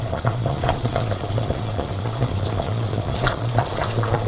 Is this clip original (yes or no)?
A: no